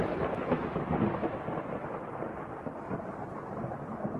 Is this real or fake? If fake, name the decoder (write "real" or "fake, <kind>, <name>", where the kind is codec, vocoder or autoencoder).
fake, vocoder, BigVGAN v2